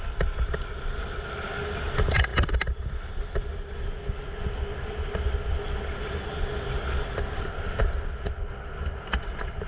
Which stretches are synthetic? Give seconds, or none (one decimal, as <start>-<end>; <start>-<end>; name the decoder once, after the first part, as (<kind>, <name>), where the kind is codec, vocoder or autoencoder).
none